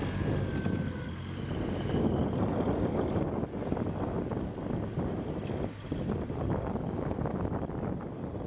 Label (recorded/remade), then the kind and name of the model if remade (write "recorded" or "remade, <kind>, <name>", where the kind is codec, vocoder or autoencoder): recorded